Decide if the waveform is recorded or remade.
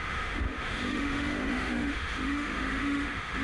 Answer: remade